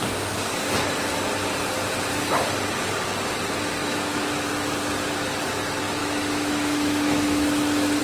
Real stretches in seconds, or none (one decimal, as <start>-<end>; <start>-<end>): 0.0-3.8; 4.5-6.0